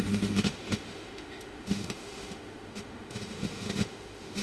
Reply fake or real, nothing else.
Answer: fake